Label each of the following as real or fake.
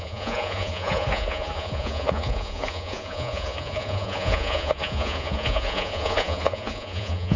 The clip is fake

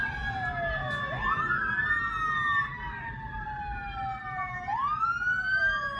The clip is real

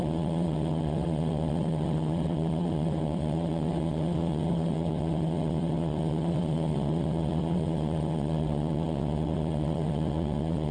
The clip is fake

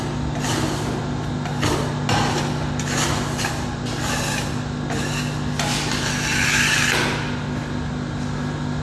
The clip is real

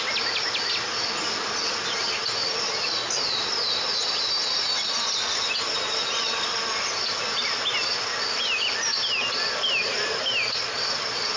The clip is real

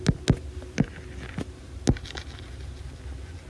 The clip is real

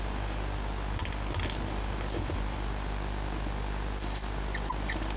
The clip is real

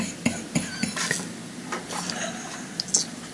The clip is real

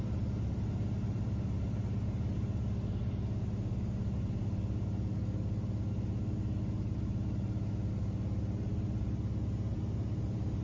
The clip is real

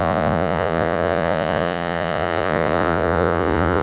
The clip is fake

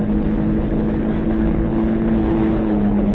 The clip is fake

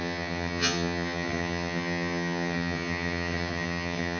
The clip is fake